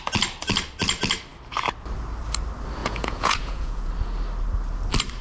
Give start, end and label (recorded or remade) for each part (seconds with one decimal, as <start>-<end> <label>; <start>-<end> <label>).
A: 0.0-2.8 recorded; 2.8-3.9 remade; 3.9-5.2 recorded